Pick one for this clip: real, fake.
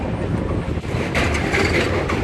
real